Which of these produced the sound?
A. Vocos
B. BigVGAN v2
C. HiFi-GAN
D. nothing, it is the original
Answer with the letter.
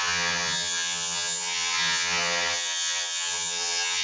C